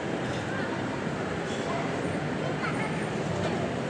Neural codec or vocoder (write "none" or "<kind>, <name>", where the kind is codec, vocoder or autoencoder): none